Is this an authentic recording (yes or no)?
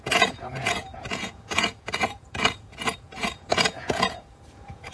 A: no